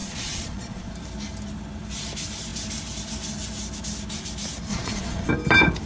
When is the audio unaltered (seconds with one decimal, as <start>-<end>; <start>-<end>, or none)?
0.9-4.7; 5.3-5.9